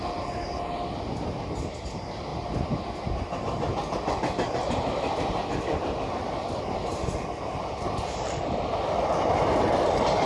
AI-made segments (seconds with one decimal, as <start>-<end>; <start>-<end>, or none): none